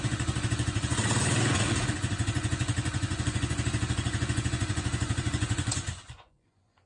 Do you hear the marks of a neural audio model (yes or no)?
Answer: yes